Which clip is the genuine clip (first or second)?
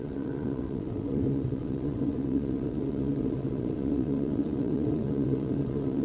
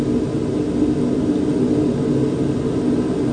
second